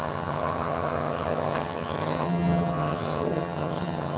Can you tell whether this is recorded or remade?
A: remade